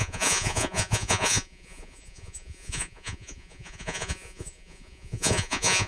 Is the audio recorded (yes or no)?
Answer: no